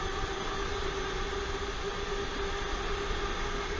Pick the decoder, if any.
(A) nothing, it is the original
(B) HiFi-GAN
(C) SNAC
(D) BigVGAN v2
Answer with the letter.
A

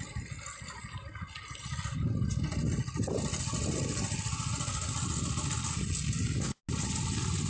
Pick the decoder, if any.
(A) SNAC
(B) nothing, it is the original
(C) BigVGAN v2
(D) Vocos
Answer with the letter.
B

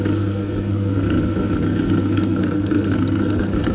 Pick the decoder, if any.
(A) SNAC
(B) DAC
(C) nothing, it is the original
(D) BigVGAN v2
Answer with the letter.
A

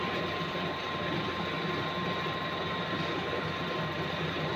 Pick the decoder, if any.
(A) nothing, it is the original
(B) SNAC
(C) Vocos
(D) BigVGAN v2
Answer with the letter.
A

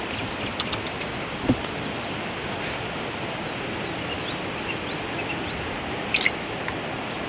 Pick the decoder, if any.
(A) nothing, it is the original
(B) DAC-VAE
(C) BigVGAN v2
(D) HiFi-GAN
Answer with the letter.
A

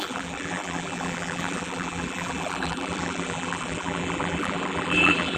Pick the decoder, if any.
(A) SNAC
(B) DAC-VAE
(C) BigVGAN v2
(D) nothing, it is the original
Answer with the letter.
C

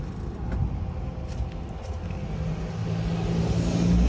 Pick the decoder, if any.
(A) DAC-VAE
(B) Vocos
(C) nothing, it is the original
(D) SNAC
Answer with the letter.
C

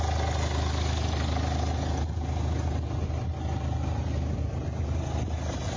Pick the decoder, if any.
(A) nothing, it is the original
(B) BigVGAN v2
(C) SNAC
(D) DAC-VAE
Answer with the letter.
A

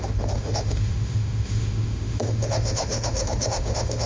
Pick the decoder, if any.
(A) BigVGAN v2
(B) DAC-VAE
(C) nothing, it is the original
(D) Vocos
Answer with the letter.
B